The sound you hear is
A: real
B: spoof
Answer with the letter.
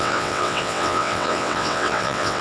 B